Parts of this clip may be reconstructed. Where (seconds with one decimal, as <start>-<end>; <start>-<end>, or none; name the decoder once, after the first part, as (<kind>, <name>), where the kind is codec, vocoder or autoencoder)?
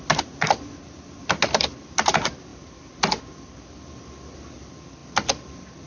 none